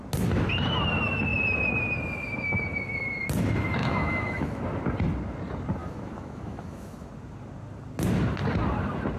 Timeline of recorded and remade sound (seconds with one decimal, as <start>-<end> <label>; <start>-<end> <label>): 0.0-3.8 recorded; 3.8-4.6 remade; 4.6-5.8 recorded; 5.8-7.1 remade; 7.1-9.2 recorded